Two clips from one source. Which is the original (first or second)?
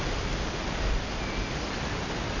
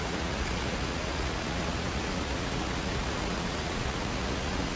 first